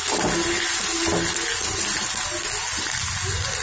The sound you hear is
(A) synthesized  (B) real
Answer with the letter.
B